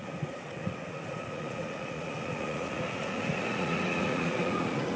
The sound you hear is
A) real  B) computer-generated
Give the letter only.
B